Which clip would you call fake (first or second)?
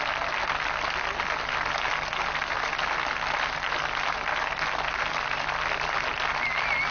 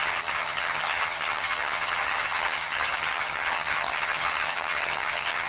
second